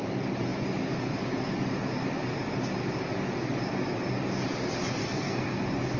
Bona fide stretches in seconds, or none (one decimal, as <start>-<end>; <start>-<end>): 0.0-5.0; 5.6-6.0